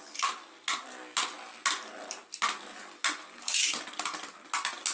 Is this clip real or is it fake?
real